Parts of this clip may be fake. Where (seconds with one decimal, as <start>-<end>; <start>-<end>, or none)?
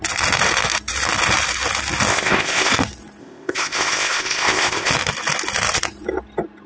2.1-2.7; 3.2-4.9